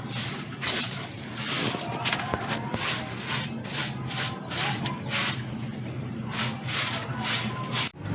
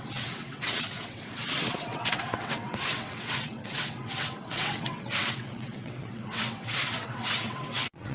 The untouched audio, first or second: first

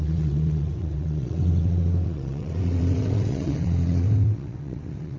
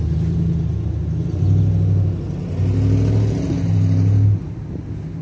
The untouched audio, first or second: second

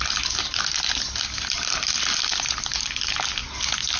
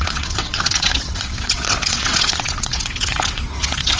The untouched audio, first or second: first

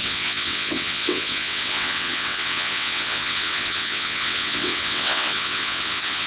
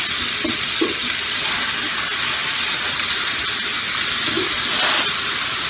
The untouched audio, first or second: second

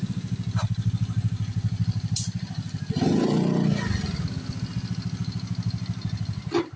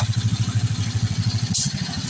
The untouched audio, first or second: first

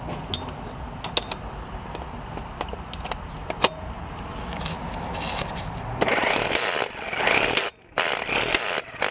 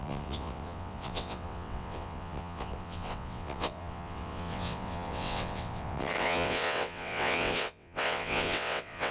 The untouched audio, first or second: first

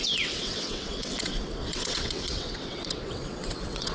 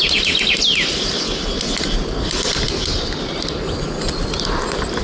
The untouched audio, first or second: second